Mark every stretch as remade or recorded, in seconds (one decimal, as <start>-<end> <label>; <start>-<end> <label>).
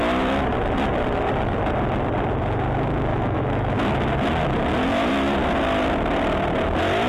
0.0-3.1 recorded; 3.1-3.7 remade; 3.7-7.1 recorded